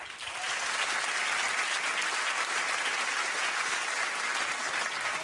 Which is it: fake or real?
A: real